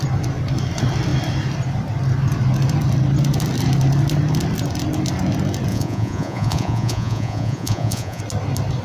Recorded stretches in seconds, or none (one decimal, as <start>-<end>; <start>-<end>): 0.0-5.7; 8.2-8.8